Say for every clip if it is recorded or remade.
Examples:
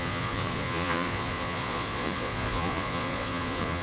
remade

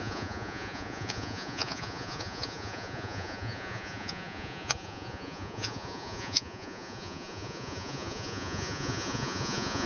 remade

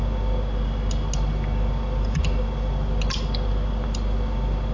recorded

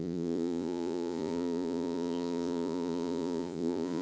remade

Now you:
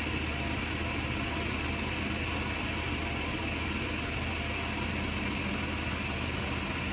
recorded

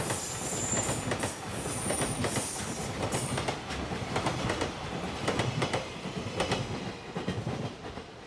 recorded